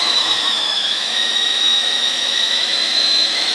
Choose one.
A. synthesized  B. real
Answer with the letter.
A